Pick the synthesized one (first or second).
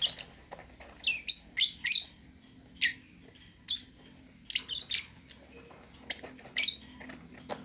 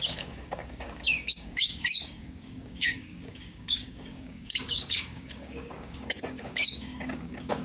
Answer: second